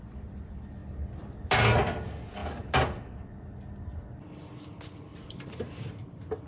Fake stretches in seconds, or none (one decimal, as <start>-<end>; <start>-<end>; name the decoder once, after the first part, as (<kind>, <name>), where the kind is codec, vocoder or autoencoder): 5.1-5.9 (vocoder, BigVGAN v2)